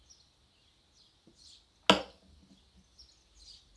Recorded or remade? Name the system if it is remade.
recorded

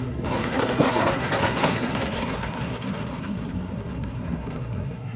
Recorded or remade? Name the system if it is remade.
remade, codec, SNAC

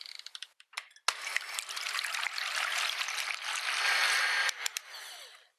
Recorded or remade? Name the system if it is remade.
recorded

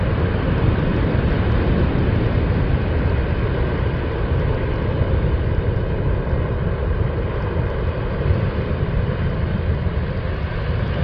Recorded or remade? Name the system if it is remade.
recorded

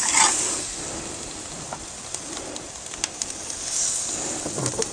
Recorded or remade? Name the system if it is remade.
recorded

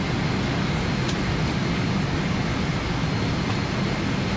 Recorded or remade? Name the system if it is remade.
recorded